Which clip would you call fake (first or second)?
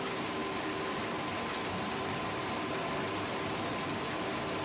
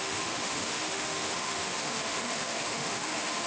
second